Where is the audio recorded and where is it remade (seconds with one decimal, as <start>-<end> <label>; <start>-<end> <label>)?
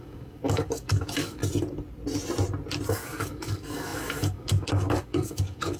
0.0-1.4 remade; 1.4-2.9 recorded; 2.9-5.8 remade